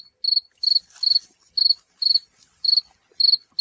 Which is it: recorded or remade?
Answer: recorded